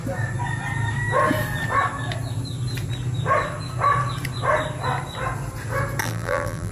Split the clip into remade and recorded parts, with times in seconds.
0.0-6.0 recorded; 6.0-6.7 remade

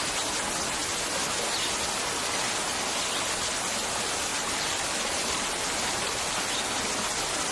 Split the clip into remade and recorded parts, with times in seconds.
0.0-4.3 recorded; 4.3-6.4 remade; 6.4-7.5 recorded

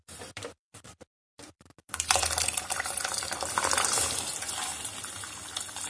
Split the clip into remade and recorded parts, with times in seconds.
0.0-4.7 remade; 4.7-5.2 recorded; 5.2-5.9 remade

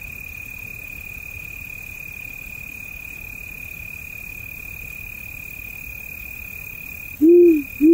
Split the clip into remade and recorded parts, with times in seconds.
0.0-7.9 recorded

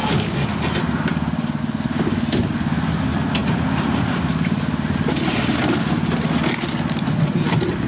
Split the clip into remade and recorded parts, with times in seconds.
0.0-3.4 recorded; 3.4-5.8 remade; 5.8-7.9 recorded

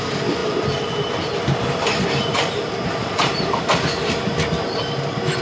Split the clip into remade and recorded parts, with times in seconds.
0.0-0.4 recorded; 0.4-3.6 remade; 3.6-5.4 recorded

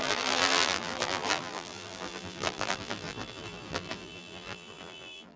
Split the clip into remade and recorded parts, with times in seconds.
0.0-5.4 remade

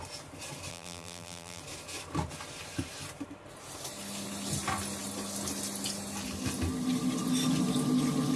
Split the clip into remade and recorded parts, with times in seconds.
0.0-0.7 recorded; 0.7-1.6 remade; 1.6-8.4 recorded